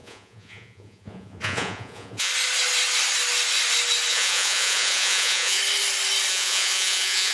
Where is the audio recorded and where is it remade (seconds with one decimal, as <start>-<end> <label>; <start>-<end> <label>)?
0.0-2.3 remade; 2.3-4.1 recorded; 4.1-5.6 remade; 5.6-6.3 recorded; 6.3-7.3 remade